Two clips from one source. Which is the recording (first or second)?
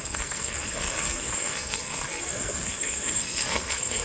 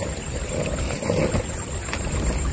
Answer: second